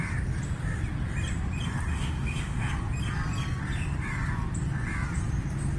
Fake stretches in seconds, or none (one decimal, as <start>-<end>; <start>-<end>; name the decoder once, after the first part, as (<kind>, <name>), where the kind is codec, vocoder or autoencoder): 1.9-2.7 (autoencoder, DAC-VAE)